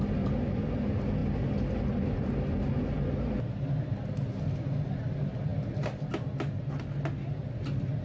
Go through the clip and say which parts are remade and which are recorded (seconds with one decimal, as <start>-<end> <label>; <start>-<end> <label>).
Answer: 0.0-8.0 recorded

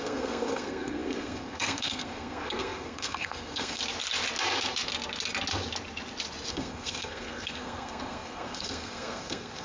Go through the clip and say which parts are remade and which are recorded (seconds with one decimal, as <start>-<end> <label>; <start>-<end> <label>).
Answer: 0.0-3.8 remade; 3.8-6.5 recorded; 6.5-9.6 remade

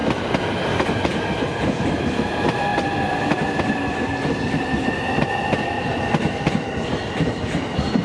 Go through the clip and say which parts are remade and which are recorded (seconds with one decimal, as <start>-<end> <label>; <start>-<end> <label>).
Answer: 0.0-0.6 recorded; 0.6-8.0 remade

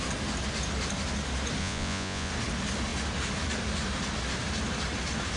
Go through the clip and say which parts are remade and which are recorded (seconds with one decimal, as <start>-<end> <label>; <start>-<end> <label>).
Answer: 0.0-1.6 recorded; 1.6-2.3 remade; 2.3-5.4 recorded

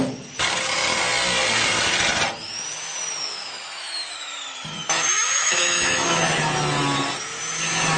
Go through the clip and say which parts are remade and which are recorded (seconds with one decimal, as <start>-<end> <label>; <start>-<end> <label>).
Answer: 0.0-2.4 recorded; 2.4-6.4 remade; 6.4-8.0 recorded

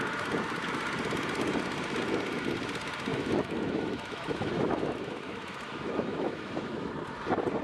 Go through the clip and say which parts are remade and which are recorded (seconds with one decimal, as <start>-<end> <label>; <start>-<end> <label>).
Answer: 0.0-3.1 recorded; 3.1-6.9 remade; 6.9-7.6 recorded

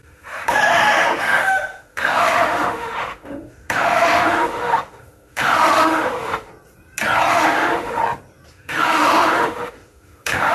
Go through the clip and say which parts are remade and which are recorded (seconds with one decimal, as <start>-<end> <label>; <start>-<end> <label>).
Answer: 0.0-6.5 remade; 6.5-7.3 recorded; 7.3-8.0 remade; 8.0-8.5 recorded; 8.5-10.5 remade

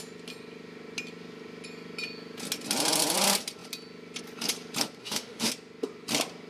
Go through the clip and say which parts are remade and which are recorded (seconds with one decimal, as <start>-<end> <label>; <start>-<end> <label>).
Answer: 0.0-5.0 recorded; 5.0-5.5 remade; 5.5-6.5 recorded